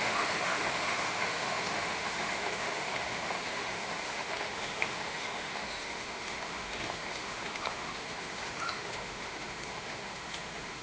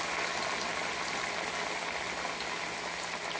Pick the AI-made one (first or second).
first